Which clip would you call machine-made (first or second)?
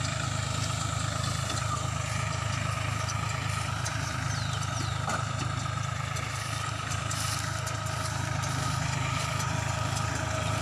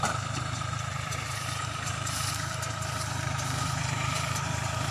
second